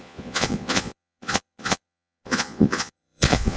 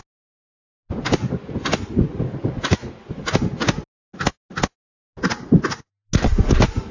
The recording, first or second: second